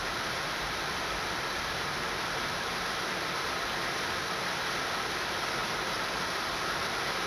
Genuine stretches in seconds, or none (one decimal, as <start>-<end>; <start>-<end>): 3.3-5.6